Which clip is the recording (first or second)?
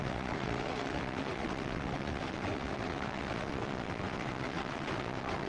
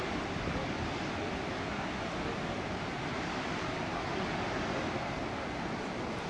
second